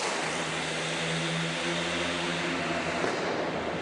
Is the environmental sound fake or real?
real